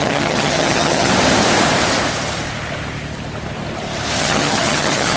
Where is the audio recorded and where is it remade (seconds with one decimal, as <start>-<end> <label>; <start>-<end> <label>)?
0.0-1.1 remade; 1.1-4.2 recorded; 4.2-5.2 remade